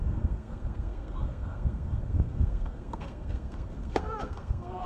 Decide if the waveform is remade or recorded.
remade